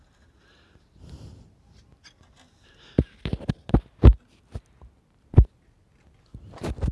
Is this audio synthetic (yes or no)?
no